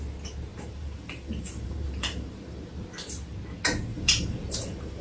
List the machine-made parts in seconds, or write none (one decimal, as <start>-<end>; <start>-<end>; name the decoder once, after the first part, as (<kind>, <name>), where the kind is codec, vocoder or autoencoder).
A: 0.5-2.8 (vocoder, BigVGAN v2); 3.9-5.0